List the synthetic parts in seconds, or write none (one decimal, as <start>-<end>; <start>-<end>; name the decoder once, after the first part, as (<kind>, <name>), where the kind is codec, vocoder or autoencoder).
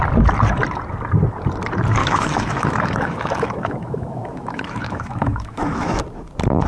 2.0-6.0 (autoencoder, DAC-VAE)